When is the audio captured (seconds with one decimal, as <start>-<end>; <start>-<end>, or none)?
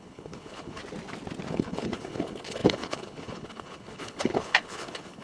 0.8-1.5